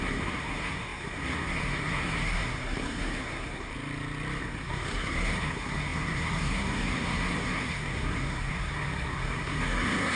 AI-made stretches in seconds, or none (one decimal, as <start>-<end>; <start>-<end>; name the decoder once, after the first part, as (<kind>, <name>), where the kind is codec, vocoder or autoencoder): 0.0-3.7 (codec, SNAC); 4.4-10.2